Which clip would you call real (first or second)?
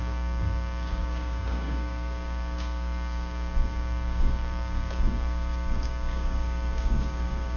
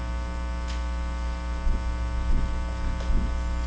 second